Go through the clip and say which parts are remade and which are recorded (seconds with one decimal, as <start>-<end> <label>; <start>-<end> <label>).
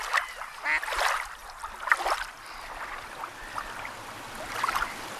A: 0.0-1.4 recorded; 1.4-4.5 remade; 4.5-5.2 recorded